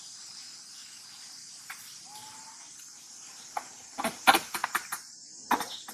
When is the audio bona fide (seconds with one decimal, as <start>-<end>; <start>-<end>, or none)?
0.8-1.6; 2.2-2.8; 4.6-5.9